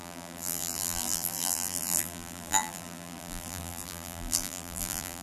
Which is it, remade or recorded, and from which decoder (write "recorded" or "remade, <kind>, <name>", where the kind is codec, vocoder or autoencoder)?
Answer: remade, vocoder, BigVGAN v2